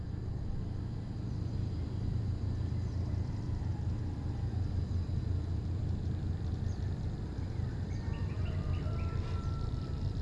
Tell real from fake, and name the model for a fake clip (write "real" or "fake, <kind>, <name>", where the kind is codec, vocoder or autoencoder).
fake, vocoder, BigVGAN v2